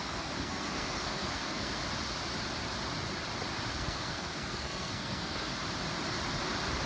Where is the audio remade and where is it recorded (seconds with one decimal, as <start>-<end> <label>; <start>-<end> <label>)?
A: 0.0-1.8 remade; 1.8-3.7 recorded; 3.7-5.5 remade; 5.5-6.9 recorded